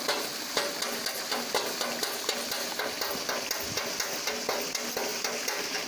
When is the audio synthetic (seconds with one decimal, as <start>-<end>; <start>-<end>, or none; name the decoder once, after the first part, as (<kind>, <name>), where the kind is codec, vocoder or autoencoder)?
5.1-5.9 (vocoder, BigVGAN v2)